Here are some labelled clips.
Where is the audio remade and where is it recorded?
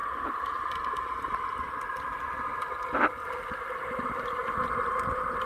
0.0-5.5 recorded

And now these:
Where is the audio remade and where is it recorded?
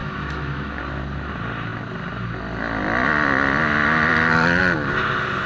0.0-0.8 remade; 0.8-5.5 recorded